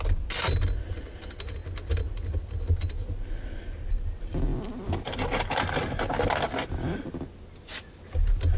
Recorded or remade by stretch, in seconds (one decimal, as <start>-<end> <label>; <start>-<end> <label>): 0.0-8.6 recorded